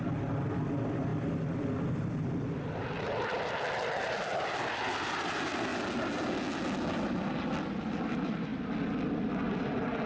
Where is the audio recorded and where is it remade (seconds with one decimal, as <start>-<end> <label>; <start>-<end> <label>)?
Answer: 0.0-10.1 recorded